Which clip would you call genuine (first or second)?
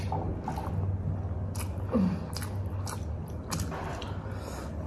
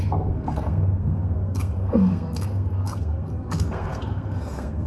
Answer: first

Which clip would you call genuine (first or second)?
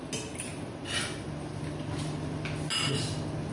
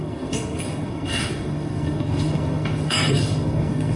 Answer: first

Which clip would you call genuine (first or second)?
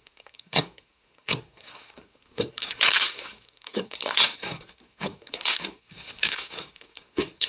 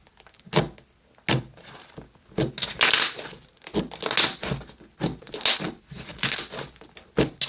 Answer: second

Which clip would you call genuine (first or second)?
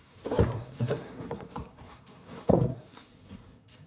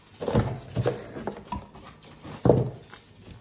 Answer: second